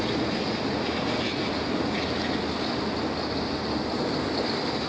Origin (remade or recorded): recorded